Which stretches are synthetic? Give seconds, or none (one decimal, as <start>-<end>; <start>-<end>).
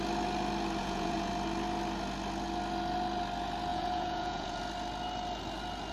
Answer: 0.8-1.3; 3.7-4.6